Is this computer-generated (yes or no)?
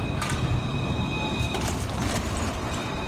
yes